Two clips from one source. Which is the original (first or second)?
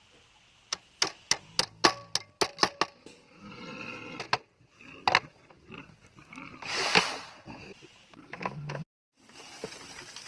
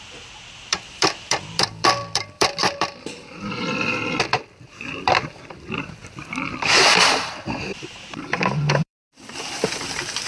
first